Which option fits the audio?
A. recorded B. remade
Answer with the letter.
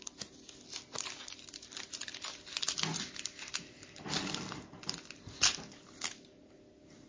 A